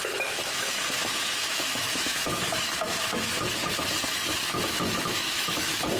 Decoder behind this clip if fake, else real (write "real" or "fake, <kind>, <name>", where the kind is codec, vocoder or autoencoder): fake, autoencoder, DAC-VAE